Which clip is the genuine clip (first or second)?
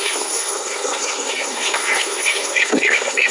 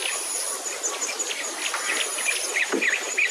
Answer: second